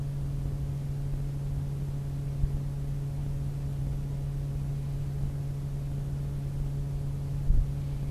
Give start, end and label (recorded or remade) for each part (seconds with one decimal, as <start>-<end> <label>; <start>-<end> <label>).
0.0-8.1 recorded